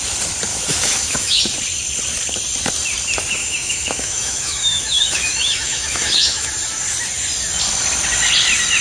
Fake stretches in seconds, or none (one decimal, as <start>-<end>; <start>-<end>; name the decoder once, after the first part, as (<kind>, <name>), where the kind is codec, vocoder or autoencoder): 0.5-1.4 (autoencoder, DAC-VAE); 3.4-6.5